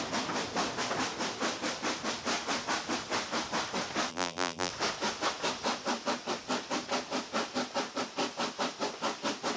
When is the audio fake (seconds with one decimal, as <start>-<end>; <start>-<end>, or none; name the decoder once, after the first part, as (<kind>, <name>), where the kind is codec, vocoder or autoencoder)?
4.1-4.7 (vocoder, BigVGAN v2)